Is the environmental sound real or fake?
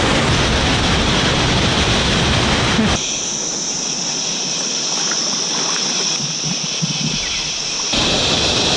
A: real